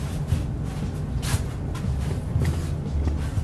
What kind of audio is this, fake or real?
real